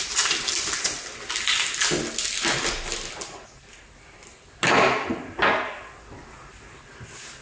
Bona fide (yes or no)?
yes